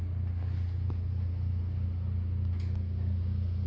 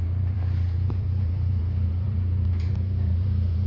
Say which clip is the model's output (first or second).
second